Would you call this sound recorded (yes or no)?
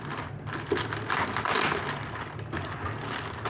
yes